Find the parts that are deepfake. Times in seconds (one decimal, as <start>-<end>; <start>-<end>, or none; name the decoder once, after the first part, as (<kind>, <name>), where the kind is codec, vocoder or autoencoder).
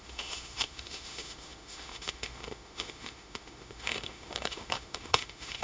0.0-5.6 (autoencoder, DAC-VAE)